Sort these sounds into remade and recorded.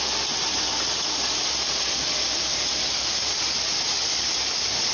recorded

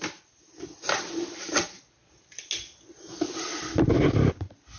recorded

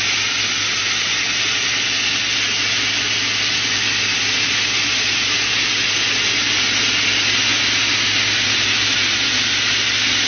recorded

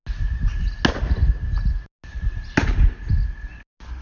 recorded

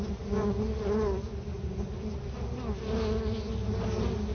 recorded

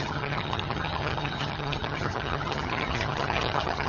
remade